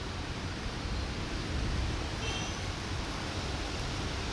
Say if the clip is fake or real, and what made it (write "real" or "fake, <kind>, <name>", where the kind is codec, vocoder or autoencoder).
real